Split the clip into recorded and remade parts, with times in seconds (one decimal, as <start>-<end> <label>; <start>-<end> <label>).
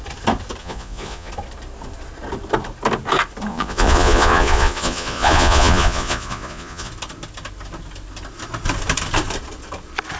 0.0-0.6 recorded; 0.6-1.3 remade; 1.3-3.5 recorded; 3.5-6.9 remade; 6.9-10.2 recorded